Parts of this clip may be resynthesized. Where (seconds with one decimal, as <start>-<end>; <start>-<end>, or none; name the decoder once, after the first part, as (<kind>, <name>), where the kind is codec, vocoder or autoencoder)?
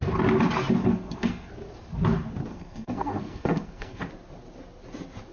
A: 0.8-1.5 (codec, SNAC); 2.5-4.1